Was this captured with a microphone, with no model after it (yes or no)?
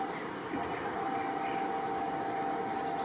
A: yes